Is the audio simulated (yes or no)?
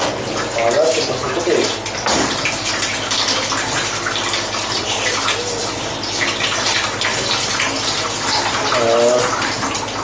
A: no